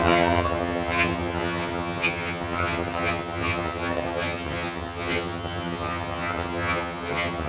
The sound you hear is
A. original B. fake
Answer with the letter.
B